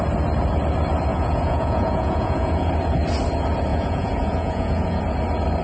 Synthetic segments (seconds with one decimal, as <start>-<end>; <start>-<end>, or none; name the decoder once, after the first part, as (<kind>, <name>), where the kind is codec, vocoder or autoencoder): 1.1-2.7 (vocoder, Vocos); 3.7-5.0